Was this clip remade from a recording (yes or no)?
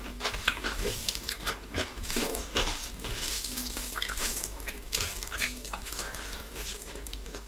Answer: yes